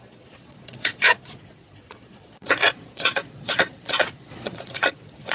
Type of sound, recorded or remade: remade